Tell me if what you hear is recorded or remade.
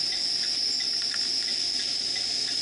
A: recorded